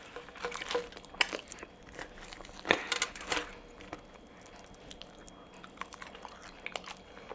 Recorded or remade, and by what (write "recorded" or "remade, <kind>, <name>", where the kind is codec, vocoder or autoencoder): recorded